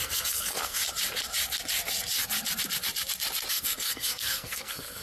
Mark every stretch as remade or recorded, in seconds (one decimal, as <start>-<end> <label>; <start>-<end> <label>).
0.0-0.8 remade; 0.8-3.5 recorded; 3.5-5.0 remade